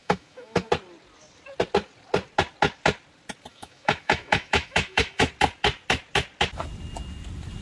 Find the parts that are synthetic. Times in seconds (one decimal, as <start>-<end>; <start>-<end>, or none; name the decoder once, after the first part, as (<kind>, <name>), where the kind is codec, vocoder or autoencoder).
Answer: 0.0-0.7 (autoencoder, DAC-VAE); 3.5-5.3